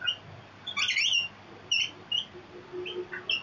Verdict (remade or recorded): recorded